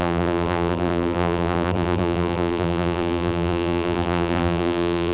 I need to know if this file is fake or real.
fake